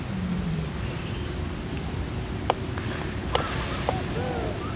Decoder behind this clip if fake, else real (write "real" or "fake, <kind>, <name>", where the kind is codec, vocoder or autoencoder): real